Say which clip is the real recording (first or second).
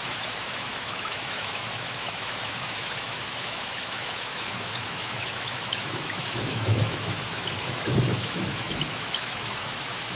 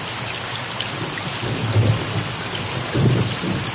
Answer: second